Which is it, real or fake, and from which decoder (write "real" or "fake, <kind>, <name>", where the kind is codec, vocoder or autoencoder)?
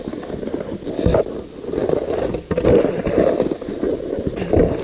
real